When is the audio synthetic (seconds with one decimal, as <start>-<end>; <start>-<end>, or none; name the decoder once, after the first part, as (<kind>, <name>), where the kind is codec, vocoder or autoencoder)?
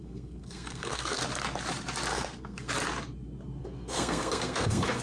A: 0.0-1.2 (codec, SNAC); 2.1-2.7; 3.6-5.0